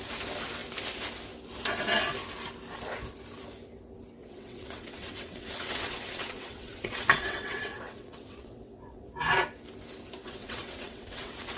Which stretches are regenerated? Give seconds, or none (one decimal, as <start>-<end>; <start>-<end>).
4.2-9.1; 10.2-11.6